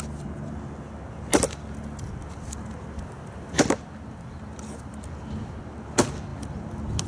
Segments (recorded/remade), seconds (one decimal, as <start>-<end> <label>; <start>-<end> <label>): 0.0-7.1 recorded